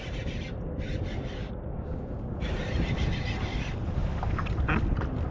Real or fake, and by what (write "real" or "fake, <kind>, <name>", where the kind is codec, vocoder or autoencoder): real